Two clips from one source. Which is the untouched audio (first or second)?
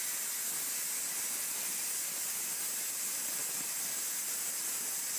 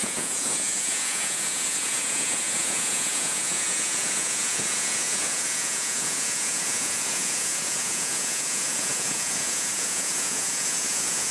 first